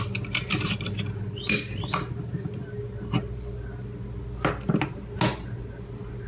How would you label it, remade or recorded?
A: recorded